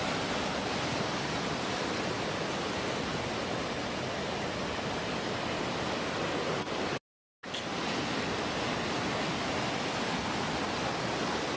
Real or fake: real